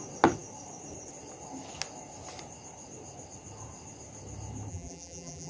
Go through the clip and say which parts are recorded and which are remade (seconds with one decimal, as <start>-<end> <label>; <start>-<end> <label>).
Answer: 0.0-4.7 recorded; 4.7-5.5 remade